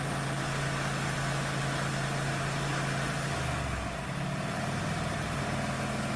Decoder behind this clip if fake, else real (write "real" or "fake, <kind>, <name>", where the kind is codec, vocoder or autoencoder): real